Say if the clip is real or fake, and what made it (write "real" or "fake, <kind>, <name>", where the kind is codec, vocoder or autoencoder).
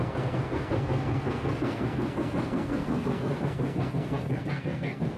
fake, codec, SNAC